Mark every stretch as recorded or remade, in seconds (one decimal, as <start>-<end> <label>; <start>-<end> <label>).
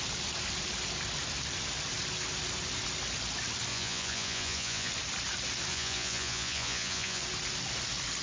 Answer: 0.0-3.7 recorded; 3.7-4.9 remade; 4.9-5.7 recorded; 5.7-7.2 remade; 7.2-8.2 recorded